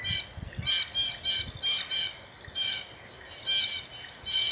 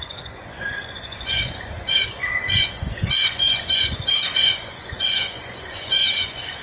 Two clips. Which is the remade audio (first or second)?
second